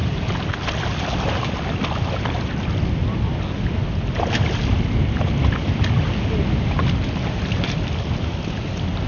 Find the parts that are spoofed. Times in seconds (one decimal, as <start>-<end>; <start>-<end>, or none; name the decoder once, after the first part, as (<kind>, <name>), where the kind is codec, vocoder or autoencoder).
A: none